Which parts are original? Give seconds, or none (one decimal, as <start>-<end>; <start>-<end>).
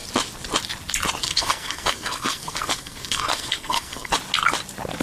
0.0-1.2; 4.1-5.0